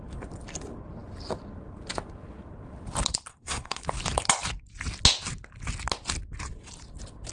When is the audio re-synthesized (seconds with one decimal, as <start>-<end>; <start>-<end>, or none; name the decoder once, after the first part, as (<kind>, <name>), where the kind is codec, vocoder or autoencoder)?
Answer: 3.3-3.8 (codec, SNAC)